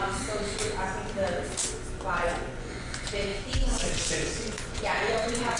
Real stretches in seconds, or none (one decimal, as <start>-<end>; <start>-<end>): 0.0-2.1